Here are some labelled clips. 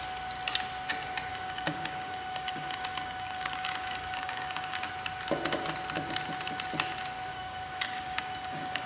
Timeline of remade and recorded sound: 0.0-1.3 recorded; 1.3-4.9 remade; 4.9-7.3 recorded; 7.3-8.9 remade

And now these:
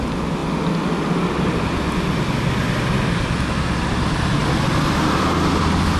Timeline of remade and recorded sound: 0.0-6.0 recorded

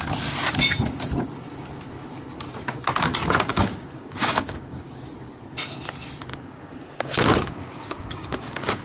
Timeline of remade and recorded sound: 0.0-3.5 recorded; 3.5-5.0 remade; 5.0-6.3 recorded; 6.3-8.8 remade